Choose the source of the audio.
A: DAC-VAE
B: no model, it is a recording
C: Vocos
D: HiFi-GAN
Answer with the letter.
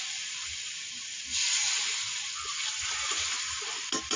B